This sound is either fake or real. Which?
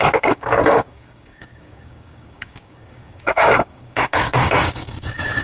fake